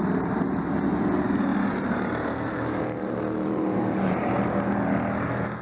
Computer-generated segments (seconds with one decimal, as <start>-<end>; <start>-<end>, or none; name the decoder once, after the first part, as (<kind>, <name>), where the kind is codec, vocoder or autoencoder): 1.5-4.3 (vocoder, BigVGAN v2)